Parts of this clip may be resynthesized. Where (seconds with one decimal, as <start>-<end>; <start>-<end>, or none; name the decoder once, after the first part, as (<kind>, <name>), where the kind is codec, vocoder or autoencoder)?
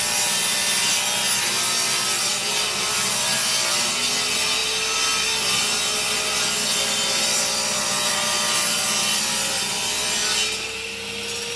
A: none